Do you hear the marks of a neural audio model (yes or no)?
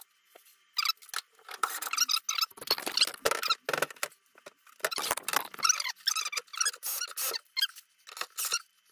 no